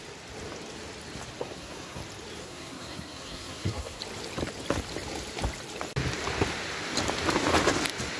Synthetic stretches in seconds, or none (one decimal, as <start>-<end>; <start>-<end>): 1.4-2.0; 2.4-4.0